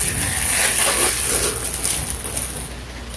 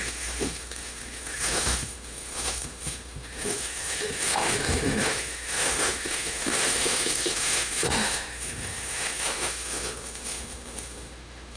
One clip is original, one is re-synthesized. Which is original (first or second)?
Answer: first